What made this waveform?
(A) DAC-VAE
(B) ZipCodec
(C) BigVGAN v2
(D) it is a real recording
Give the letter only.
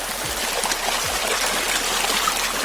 C